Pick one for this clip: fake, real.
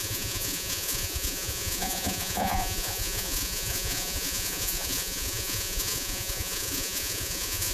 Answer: fake